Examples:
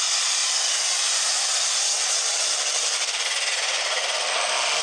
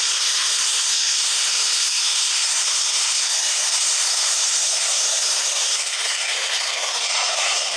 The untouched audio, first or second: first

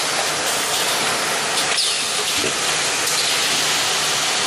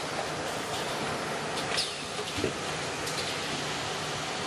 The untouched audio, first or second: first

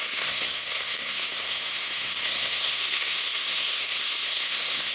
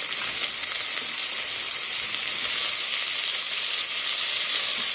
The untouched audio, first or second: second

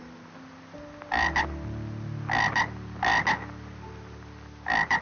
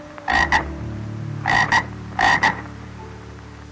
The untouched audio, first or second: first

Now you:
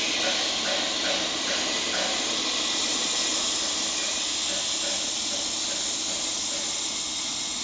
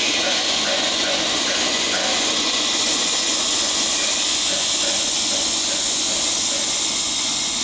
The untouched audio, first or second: first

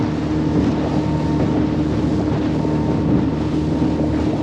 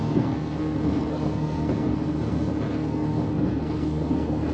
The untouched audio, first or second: first